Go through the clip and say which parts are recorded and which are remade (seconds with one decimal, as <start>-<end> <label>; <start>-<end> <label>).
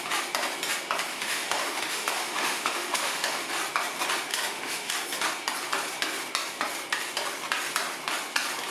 0.0-1.1 recorded; 1.1-3.5 remade; 3.5-4.3 recorded; 4.3-4.9 remade; 4.9-8.7 recorded